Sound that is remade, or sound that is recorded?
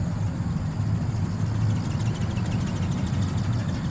recorded